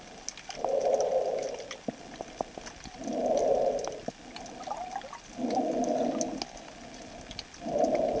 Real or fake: real